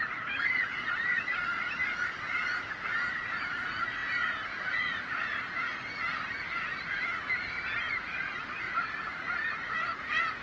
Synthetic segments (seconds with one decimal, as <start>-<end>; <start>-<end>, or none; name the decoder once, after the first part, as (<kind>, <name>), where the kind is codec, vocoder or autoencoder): 0.0-5.7 (vocoder, Vocos); 6.3-7.0; 7.8-10.4

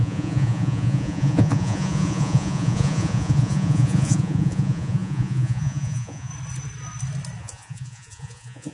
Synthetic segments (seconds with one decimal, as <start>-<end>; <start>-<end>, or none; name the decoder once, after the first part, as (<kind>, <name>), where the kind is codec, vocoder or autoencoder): 0.0-6.3 (vocoder, Vocos); 7.4-8.7